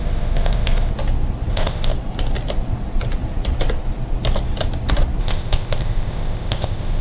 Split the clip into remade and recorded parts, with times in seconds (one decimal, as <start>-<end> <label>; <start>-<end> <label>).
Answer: 0.0-0.9 remade; 0.9-1.5 recorded; 1.5-1.9 remade; 1.9-5.2 recorded; 5.2-7.0 remade